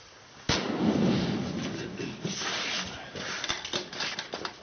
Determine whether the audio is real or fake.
real